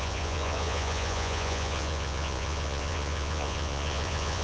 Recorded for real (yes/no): no